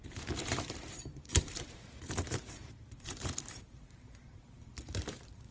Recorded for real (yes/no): no